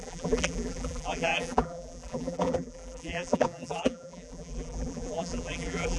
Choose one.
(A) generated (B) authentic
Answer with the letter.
A